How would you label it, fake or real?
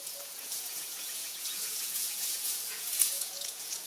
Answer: fake